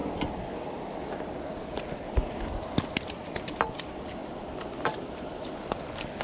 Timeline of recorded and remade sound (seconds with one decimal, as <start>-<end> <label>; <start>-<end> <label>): 0.0-6.2 recorded